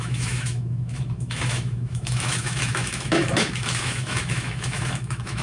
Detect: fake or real fake